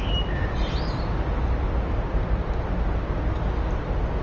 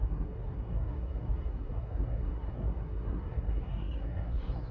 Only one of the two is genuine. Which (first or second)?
first